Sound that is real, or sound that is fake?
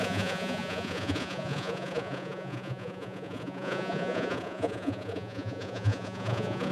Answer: fake